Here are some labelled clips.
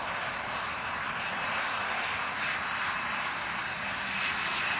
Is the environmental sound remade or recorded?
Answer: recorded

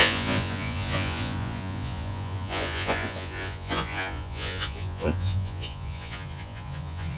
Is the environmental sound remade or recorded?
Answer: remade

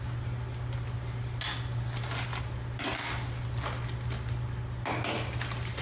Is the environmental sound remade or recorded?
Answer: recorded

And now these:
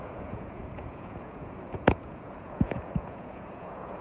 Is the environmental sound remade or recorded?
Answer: remade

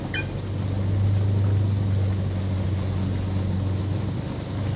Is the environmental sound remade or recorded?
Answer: recorded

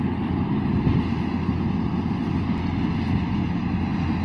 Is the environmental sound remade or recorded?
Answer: recorded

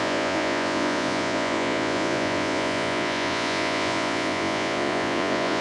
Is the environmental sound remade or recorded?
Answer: remade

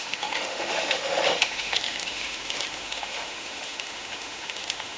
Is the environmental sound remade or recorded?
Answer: remade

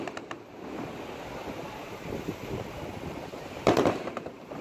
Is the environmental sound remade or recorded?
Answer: recorded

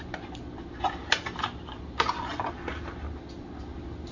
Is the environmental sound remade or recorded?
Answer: recorded